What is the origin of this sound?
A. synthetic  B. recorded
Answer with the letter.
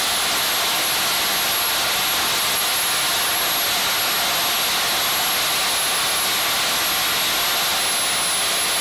B